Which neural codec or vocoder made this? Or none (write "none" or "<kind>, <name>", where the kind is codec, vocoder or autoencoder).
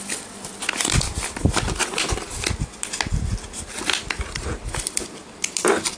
none